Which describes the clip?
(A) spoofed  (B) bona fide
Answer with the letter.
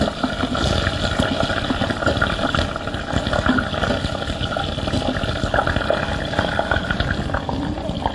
B